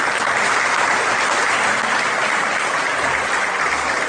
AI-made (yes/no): no